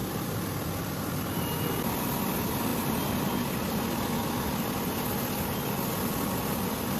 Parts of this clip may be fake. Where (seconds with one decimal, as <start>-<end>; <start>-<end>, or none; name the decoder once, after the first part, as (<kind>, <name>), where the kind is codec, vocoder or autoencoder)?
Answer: none

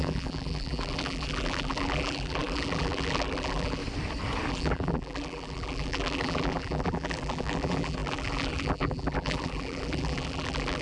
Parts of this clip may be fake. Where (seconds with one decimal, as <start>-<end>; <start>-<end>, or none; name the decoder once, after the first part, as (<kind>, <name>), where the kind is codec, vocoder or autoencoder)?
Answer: 0.0-3.8 (vocoder, BigVGAN v2); 4.5-10.8

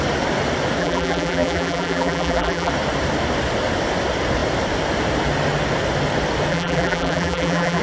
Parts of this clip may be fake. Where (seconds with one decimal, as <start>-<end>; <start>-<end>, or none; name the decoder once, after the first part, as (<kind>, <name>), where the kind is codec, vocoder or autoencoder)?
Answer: 0.8-2.7 (vocoder, BigVGAN v2); 6.5-7.8

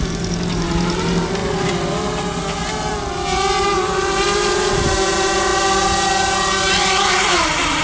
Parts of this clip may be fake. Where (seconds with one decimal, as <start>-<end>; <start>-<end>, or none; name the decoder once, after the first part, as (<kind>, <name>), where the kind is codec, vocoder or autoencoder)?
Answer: 0.0-1.4 (vocoder, BigVGAN v2); 2.9-5.5; 6.7-7.8

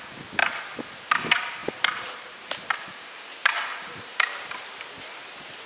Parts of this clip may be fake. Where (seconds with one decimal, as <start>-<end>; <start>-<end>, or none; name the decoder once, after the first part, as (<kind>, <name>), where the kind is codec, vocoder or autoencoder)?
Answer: 1.6-4.5 (vocoder, BigVGAN v2)

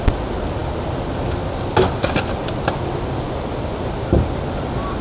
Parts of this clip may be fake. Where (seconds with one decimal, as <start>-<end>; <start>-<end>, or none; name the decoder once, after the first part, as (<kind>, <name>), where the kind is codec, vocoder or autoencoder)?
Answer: none